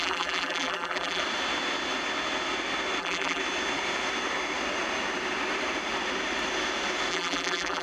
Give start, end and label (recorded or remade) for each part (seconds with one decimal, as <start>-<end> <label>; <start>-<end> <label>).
0.0-1.2 remade; 1.2-3.0 recorded; 3.0-3.4 remade; 3.4-7.1 recorded; 7.1-7.8 remade